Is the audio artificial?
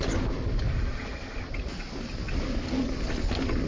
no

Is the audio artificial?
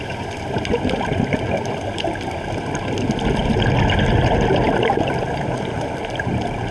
no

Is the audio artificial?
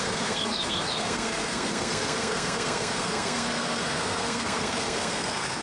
yes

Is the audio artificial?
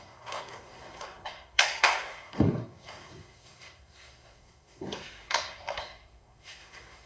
yes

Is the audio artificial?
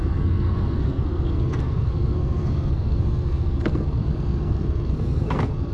yes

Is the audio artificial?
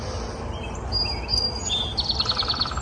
no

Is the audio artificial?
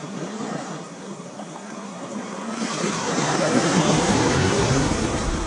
yes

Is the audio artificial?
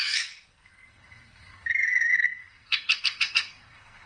yes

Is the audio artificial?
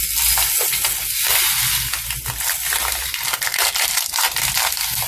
no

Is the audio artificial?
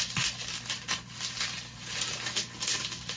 no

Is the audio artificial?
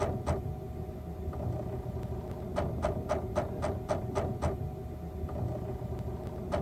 no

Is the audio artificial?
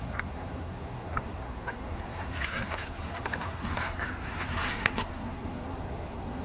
yes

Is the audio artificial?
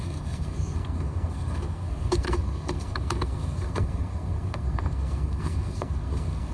yes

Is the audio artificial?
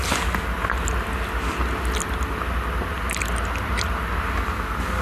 no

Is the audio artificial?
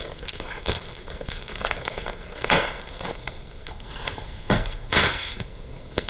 yes